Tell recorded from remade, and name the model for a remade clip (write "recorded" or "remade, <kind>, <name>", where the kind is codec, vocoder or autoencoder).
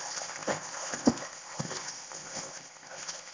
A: remade, codec, ZipCodec